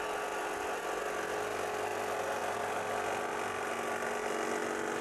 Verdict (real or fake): real